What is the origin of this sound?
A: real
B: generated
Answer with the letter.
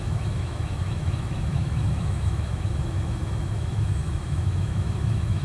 B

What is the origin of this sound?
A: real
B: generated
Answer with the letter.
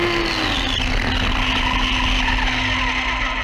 A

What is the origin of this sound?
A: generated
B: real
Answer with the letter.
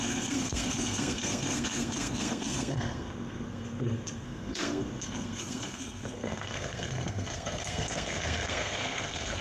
A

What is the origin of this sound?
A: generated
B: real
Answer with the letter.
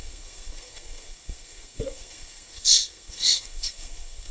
A